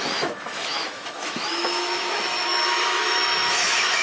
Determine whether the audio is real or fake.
fake